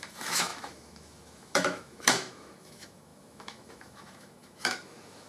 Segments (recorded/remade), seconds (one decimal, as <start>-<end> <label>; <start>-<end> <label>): 0.0-5.3 remade

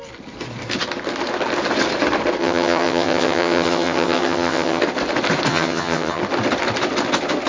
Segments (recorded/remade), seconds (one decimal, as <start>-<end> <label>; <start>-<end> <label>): 0.0-2.4 recorded; 2.4-4.8 remade; 4.8-5.5 recorded; 5.5-6.2 remade; 6.2-7.5 recorded

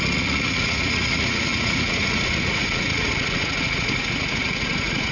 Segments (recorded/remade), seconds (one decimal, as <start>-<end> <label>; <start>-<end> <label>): 0.0-5.1 remade

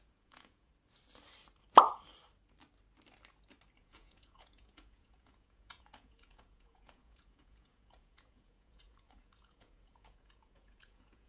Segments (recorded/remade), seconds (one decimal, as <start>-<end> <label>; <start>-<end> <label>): 0.0-0.7 remade; 0.7-3.8 recorded; 3.8-11.3 remade